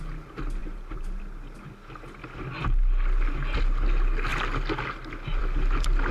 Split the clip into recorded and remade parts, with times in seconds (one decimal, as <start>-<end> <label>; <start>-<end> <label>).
0.0-0.6 recorded; 0.6-1.2 remade; 1.2-6.1 recorded